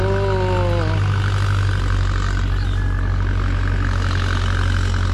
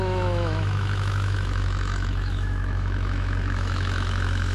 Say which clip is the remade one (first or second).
second